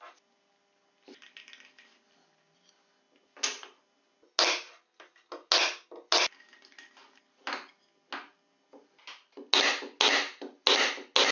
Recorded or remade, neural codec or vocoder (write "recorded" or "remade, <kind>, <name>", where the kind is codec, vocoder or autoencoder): recorded